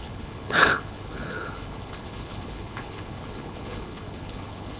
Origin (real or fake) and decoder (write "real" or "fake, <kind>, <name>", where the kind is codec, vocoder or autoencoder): fake, codec, HILCodec